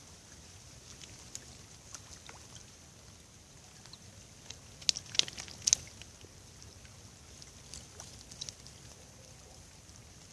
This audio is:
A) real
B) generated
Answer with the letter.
A